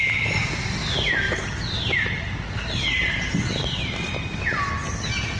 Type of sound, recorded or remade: recorded